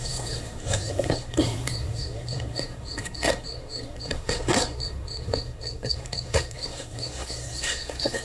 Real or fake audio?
fake